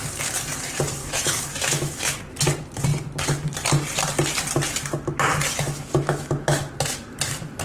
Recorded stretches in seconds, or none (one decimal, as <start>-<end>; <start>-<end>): 0.0-1.0; 2.2-5.5; 6.7-7.6